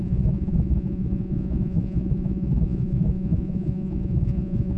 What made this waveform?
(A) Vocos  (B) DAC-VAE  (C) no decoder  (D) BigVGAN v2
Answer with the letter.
A